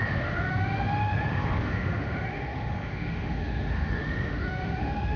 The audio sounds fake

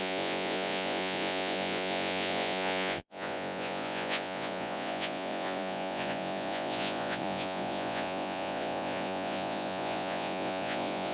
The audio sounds fake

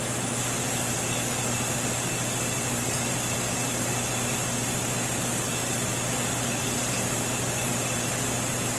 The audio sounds real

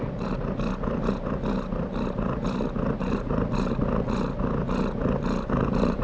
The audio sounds real